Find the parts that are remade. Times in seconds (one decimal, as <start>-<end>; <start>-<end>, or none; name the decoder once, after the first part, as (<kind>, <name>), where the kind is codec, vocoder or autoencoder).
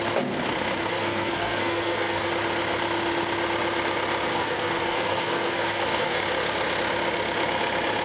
0.9-2.3 (codec, SNAC); 4.3-6.2